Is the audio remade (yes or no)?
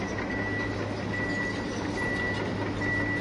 no